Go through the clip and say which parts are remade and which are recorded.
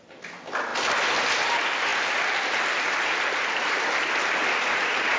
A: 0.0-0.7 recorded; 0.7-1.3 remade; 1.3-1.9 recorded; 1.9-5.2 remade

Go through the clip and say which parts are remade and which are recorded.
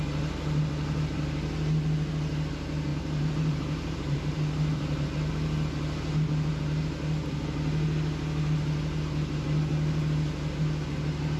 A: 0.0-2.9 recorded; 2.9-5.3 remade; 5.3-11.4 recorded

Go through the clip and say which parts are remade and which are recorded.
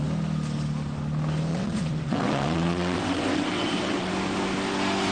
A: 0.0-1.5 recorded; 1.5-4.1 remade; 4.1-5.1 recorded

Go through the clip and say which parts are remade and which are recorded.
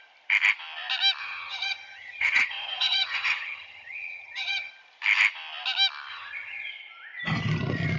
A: 0.0-1.2 recorded; 1.2-4.7 remade; 4.7-6.1 recorded; 6.1-6.7 remade; 6.7-8.0 recorded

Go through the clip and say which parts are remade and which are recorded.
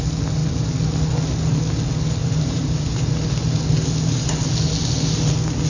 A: 0.0-2.2 recorded; 2.2-3.1 remade; 3.1-5.7 recorded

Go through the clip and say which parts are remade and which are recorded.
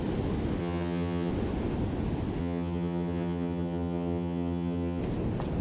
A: 0.0-0.6 recorded; 0.6-1.3 remade; 1.3-2.4 recorded; 2.4-5.0 remade; 5.0-5.6 recorded